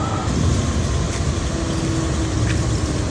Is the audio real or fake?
real